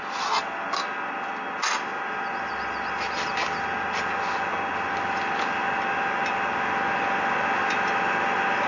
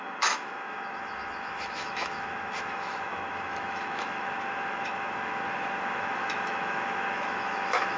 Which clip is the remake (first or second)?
second